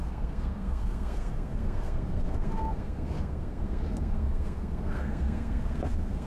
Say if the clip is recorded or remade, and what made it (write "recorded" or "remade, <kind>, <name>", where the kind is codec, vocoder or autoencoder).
remade, codec, SNAC